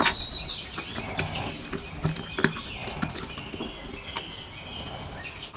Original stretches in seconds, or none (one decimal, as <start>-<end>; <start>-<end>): 0.0-5.6